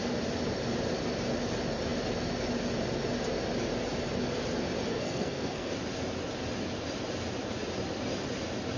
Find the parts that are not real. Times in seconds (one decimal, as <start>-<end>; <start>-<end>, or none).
4.9-5.7